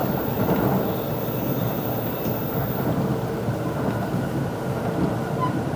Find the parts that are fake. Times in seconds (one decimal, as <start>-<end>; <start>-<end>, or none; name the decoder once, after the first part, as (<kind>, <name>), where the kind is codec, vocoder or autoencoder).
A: none